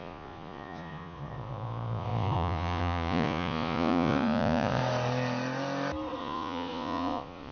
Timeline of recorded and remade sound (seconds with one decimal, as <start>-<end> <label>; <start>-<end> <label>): 0.0-4.8 remade; 4.8-6.2 recorded; 6.2-7.5 remade